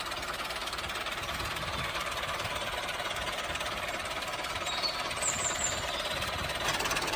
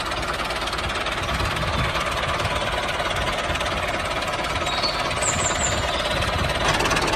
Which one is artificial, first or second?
first